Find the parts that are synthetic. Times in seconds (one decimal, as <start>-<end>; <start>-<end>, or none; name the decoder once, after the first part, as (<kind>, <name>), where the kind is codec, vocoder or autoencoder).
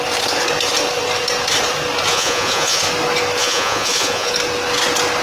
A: 2.1-2.8 (vocoder, Vocos); 3.4-4.3